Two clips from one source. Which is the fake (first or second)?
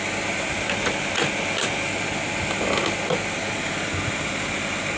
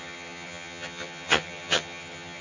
second